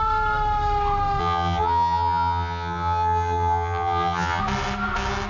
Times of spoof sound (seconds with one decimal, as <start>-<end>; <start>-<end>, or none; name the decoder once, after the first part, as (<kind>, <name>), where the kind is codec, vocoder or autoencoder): 1.2-4.4 (vocoder, HiFi-GAN)